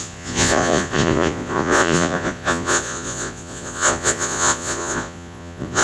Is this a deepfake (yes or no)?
yes